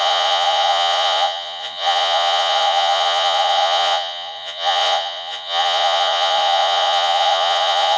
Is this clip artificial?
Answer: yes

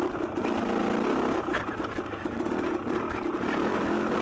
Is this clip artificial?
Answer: no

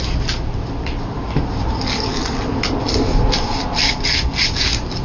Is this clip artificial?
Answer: no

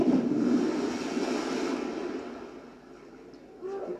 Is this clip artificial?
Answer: no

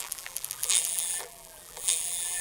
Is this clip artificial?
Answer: yes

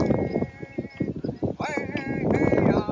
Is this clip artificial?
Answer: no